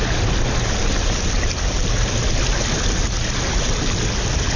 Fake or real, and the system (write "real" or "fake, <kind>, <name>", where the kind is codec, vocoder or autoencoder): real